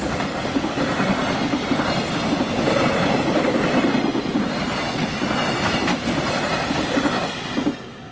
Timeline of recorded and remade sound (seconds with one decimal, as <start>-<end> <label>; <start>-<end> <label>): 0.0-8.1 recorded